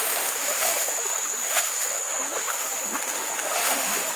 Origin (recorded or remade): remade